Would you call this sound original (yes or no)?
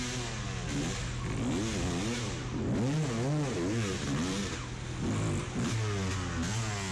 yes